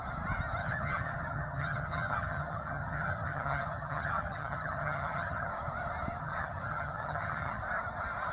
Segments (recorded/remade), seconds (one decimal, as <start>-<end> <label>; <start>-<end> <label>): 0.0-0.6 recorded; 0.6-5.5 remade; 5.5-6.2 recorded; 6.2-7.6 remade; 7.6-8.3 recorded